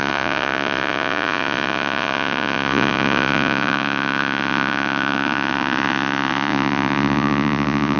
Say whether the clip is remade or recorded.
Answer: remade